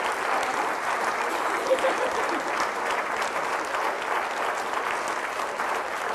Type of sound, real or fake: real